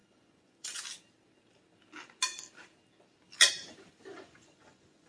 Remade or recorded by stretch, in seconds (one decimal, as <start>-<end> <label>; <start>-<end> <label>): 0.0-0.8 remade; 0.8-4.1 recorded; 4.1-5.1 remade